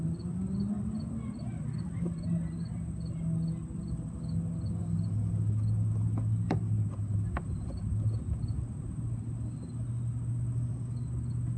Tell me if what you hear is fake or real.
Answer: real